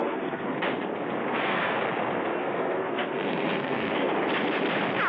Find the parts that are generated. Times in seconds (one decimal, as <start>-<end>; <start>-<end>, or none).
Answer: 0.0-0.6; 1.2-1.8; 2.4-4.1